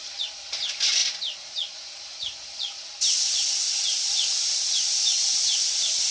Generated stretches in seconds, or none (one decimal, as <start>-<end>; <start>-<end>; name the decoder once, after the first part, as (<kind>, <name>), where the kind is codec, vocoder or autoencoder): none